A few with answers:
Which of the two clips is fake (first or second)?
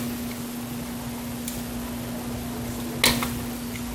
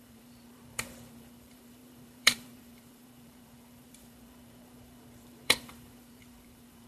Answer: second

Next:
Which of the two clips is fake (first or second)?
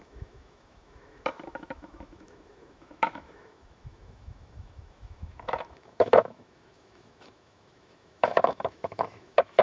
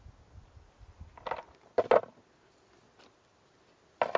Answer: first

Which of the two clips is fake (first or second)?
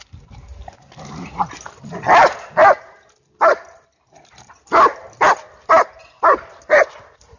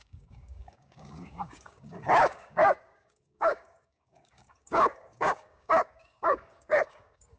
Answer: second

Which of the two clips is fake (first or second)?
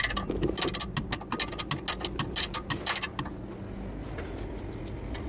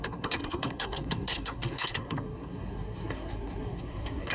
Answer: second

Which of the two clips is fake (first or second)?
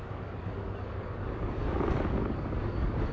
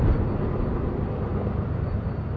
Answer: first